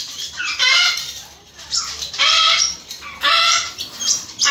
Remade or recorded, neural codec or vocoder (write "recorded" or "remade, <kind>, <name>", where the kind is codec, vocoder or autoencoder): remade, vocoder, BigVGAN v2